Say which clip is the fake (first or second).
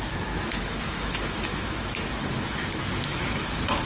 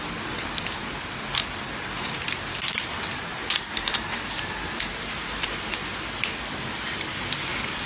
first